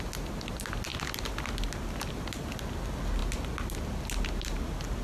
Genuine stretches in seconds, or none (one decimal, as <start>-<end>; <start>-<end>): 0.0-5.0